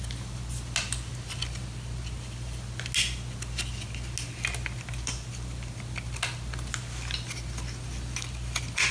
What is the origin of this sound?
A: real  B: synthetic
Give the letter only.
A